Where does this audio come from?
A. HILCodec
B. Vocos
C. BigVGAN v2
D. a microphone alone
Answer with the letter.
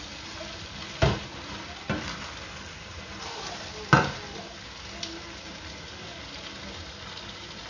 D